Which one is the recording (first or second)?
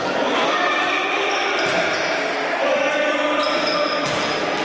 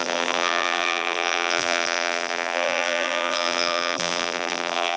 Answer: first